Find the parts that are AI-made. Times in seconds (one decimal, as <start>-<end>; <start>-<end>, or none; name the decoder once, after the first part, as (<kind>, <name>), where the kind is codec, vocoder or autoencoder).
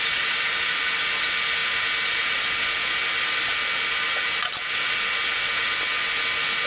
none